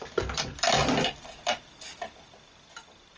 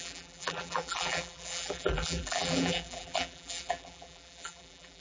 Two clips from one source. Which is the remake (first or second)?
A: second